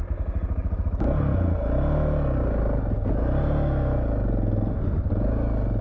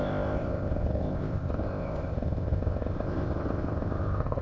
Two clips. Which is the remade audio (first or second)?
second